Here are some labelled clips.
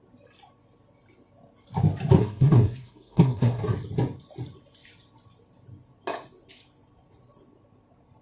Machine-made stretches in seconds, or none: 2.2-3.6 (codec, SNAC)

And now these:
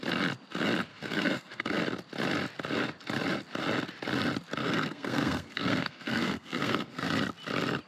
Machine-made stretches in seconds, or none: 0.9-1.8 (codec, SNAC); 4.6-7.1

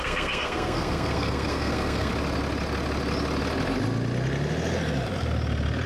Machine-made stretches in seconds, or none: 0.0-2.1 (codec, SNAC)

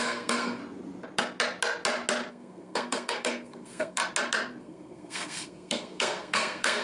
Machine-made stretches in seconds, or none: 0.0-0.6 (codec, SNAC); 2.3-4.0; 4.6-6.8

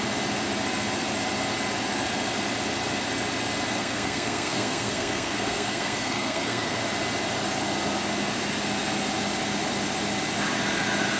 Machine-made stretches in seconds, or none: 3.8-6.8 (codec, SNAC)

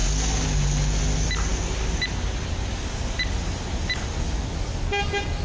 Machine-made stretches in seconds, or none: none

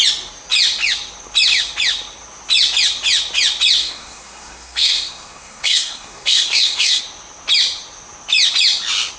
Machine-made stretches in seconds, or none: 3.8-7.0 (codec, SNAC)

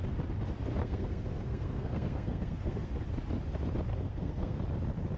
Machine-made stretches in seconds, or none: 0.8-2.9 (codec, SNAC); 3.9-4.6